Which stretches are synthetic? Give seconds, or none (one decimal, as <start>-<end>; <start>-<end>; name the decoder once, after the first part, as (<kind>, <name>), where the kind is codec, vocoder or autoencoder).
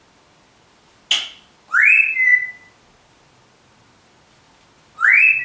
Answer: none